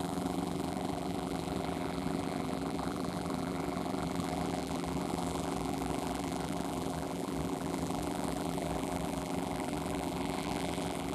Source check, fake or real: fake